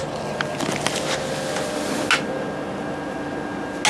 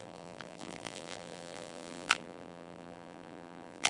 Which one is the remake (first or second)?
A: second